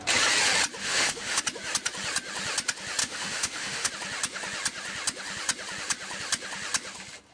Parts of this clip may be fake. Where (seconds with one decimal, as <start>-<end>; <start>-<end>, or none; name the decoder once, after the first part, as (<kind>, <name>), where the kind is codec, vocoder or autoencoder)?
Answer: 0.8-1.4 (autoencoder, DAC-VAE); 3.0-3.9